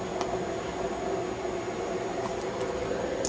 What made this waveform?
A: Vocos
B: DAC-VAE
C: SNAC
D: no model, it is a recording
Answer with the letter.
D